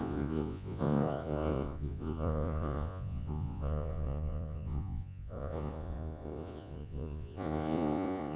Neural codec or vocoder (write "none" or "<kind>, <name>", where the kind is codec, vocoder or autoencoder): vocoder, Vocos